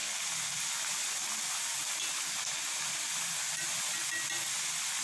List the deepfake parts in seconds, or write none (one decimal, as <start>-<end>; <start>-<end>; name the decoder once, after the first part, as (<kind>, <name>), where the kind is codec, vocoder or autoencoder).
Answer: none